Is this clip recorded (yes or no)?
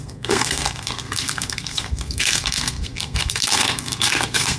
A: no